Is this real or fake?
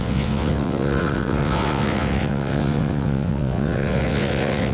fake